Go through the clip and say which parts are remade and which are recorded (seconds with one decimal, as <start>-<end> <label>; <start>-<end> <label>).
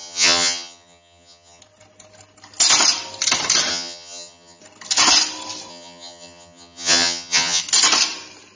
0.0-1.6 remade; 1.6-3.7 recorded; 3.7-4.6 remade; 4.6-5.7 recorded; 5.7-7.6 remade; 7.6-8.6 recorded